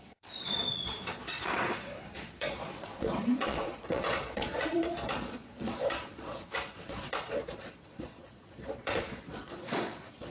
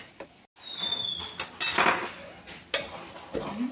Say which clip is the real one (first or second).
second